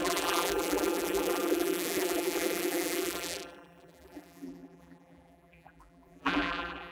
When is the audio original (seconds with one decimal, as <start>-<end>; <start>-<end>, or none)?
none